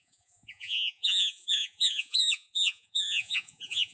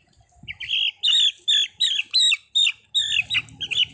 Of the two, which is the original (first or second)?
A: second